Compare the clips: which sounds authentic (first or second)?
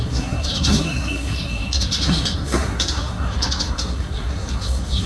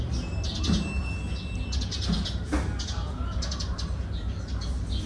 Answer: second